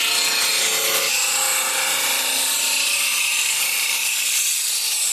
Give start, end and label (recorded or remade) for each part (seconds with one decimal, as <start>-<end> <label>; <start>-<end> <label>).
0.0-3.3 recorded; 3.3-4.0 remade; 4.0-5.1 recorded